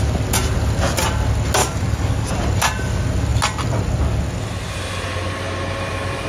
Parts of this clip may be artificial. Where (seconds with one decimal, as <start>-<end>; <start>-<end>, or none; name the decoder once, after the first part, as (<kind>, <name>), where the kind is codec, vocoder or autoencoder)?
1.6-2.3 (codec, DAC)

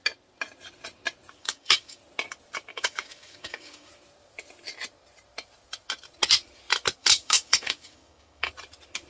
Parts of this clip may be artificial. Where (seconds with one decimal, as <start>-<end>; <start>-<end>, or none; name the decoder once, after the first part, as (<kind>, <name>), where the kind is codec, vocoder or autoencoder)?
1.4-2.0 (codec, DAC); 2.7-3.9; 7.0-8.5

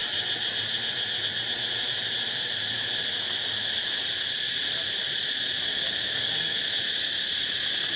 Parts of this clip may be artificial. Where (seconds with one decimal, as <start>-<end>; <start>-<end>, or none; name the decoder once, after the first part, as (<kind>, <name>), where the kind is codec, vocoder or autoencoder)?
5.7-6.6 (codec, DAC)

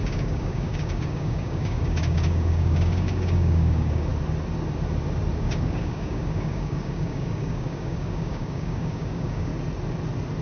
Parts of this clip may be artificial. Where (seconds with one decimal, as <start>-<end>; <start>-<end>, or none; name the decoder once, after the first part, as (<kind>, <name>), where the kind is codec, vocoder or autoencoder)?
0.0-4.1 (codec, DAC); 5.4-9.5

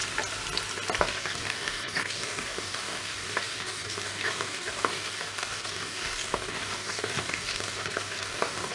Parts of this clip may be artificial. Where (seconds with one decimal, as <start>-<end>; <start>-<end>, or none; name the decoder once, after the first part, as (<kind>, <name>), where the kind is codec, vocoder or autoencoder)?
1.0-8.7 (codec, DAC)

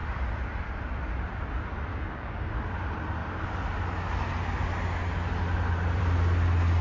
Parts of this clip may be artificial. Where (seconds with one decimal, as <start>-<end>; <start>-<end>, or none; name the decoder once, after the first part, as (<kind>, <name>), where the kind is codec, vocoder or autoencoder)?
1.9-2.5 (codec, DAC)

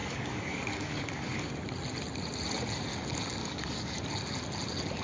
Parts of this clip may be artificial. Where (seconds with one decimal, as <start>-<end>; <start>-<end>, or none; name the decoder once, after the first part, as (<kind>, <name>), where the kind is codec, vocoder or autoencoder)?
0.0-1.5 (codec, DAC); 3.4-4.0